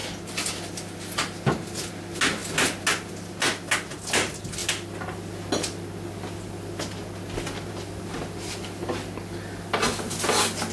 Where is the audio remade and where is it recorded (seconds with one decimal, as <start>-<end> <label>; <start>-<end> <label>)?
0.0-10.7 recorded